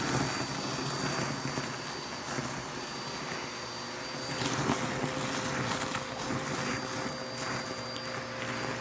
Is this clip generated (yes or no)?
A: no